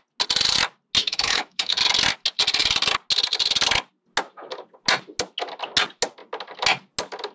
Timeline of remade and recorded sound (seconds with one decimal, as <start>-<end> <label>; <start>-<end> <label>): 0.0-1.0 recorded; 1.0-1.8 remade; 1.8-7.3 recorded